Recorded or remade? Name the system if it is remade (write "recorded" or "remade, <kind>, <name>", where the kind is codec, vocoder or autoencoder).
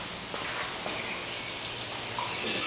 recorded